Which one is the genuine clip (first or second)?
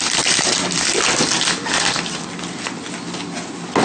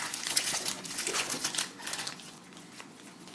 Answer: first